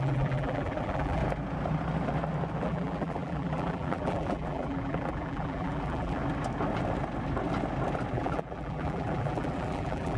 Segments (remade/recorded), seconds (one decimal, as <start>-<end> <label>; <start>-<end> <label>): 0.0-1.2 remade; 1.2-2.6 recorded; 2.6-6.2 remade; 6.2-8.1 recorded; 8.1-10.2 remade